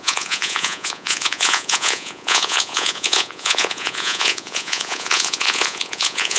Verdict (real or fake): fake